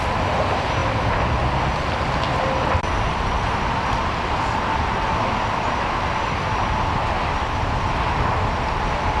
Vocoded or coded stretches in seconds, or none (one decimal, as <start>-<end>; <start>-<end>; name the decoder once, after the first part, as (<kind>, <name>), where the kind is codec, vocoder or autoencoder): none